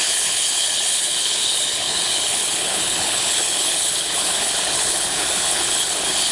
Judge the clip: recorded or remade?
remade